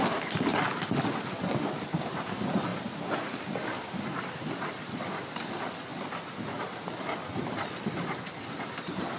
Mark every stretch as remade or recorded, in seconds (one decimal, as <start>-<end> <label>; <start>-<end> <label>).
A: 0.0-0.5 remade; 0.5-1.3 recorded; 1.3-2.7 remade; 2.7-4.5 recorded; 4.5-5.9 remade; 5.9-6.4 recorded; 6.4-9.2 remade